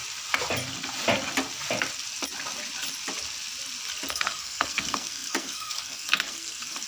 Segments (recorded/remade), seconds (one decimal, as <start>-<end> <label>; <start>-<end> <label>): 0.0-4.1 recorded; 4.1-6.9 remade